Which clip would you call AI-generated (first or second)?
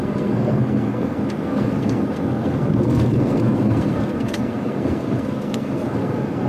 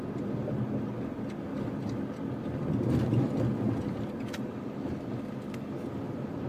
first